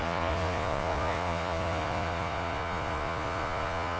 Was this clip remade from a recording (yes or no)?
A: yes